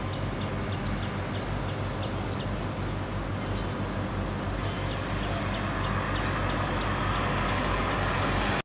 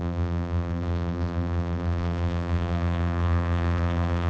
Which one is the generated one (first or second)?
second